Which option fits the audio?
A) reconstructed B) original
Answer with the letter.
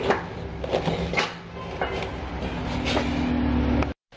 B